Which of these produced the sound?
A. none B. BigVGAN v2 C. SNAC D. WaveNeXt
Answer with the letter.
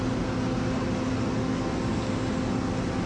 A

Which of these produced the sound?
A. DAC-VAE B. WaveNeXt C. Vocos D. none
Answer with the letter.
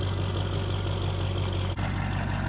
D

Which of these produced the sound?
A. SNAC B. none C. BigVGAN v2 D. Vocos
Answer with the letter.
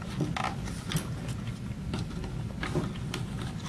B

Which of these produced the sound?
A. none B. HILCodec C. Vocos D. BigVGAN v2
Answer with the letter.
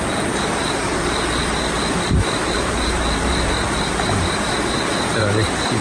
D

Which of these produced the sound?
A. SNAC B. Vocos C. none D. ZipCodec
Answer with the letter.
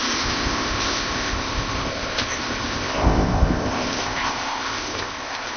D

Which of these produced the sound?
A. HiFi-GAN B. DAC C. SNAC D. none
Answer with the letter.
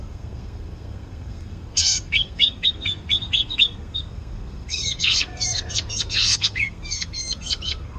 C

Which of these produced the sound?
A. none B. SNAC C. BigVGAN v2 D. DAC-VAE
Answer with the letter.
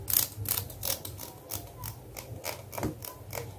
A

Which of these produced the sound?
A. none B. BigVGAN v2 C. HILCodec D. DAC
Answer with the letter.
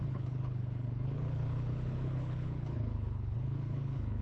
C